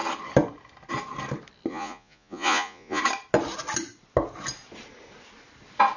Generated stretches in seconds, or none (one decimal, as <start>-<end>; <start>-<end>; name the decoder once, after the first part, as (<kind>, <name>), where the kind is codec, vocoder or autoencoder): 1.7-3.0 (vocoder, Vocos)